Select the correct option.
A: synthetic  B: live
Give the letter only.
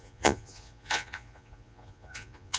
A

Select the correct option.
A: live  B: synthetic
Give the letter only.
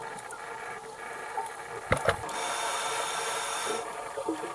A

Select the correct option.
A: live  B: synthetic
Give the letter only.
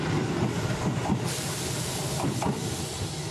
A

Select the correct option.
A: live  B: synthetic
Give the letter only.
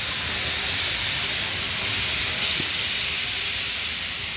A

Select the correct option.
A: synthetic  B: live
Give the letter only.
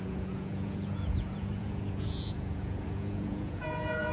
A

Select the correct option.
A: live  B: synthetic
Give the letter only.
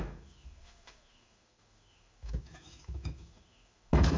B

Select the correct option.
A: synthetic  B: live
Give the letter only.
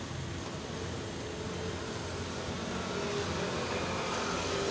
B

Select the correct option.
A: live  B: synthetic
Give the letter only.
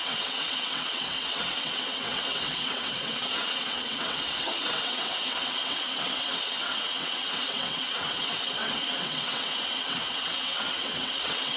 B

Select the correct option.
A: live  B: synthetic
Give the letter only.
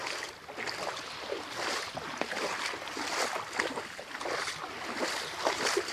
A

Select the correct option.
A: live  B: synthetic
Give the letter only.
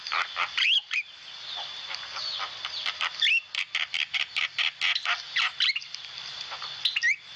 A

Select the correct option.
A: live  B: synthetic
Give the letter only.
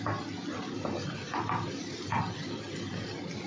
A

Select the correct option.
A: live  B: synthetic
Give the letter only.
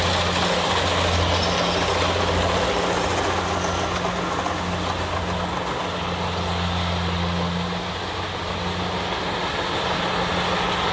A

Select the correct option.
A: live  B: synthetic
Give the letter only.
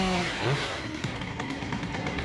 B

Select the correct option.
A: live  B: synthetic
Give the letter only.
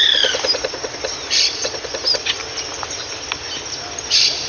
A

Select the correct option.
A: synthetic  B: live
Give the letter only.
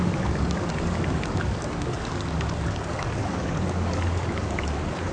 A